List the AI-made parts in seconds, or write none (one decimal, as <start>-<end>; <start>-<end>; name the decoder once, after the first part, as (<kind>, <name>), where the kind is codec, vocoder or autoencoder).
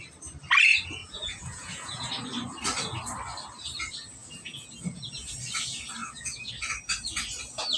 1.0-2.1 (vocoder, Vocos); 4.2-5.3; 6.0-6.5